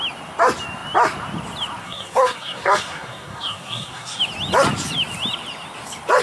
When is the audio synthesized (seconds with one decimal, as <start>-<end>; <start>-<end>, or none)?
1.8-4.2